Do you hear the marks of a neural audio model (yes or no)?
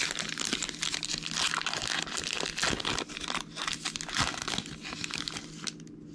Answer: no